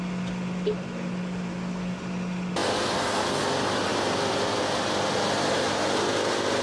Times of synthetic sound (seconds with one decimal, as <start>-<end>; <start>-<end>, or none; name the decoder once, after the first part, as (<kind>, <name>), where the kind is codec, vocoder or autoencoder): 3.9-4.6 (vocoder, BigVGAN v2)